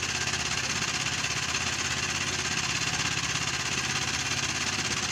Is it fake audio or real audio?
real